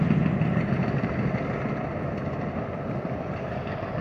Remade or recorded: recorded